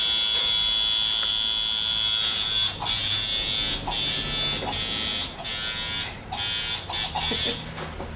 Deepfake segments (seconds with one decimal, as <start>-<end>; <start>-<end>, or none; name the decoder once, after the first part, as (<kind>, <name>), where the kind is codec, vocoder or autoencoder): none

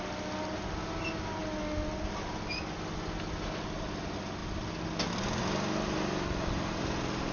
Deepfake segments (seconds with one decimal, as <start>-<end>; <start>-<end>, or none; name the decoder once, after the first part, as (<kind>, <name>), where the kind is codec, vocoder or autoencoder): none

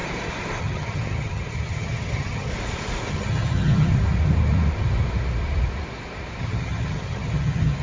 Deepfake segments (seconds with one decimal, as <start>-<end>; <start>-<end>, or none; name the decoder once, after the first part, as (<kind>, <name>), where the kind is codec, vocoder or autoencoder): 0.6-2.5 (vocoder, HiFi-GAN); 3.1-3.9; 6.4-7.8

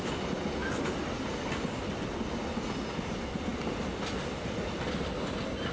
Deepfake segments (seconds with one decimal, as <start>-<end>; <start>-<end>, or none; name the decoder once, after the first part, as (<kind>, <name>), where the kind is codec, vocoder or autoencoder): none

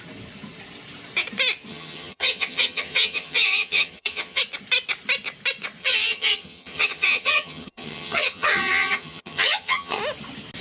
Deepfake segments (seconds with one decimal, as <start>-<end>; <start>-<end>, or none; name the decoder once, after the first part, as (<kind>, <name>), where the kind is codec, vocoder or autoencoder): 1.7-4.4 (vocoder, HiFi-GAN); 5.8-10.0